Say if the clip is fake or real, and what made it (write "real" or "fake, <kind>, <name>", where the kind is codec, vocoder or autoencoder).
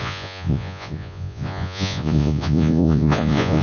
fake, vocoder, Vocos